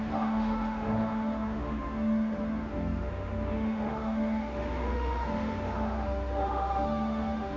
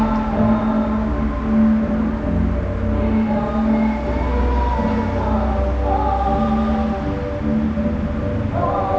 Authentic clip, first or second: second